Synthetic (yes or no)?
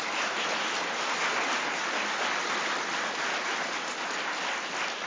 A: no